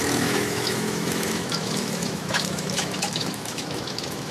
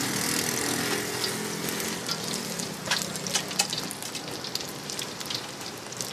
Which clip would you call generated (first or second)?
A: first